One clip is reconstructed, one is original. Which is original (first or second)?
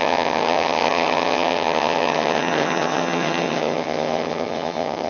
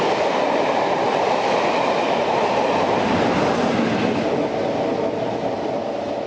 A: second